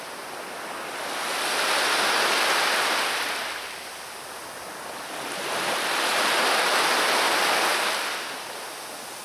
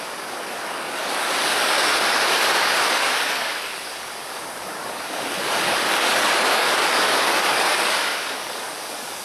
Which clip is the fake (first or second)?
second